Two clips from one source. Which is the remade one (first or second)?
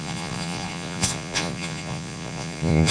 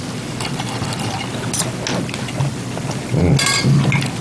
first